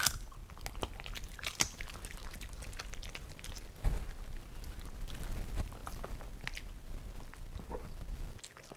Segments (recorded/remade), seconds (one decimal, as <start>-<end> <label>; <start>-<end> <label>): 0.0-8.8 recorded